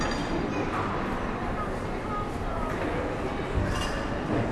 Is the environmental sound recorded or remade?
recorded